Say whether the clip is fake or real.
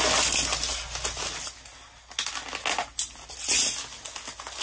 real